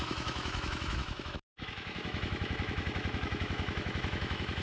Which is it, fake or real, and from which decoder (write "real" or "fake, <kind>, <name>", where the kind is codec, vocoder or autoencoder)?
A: fake, autoencoder, DAC-VAE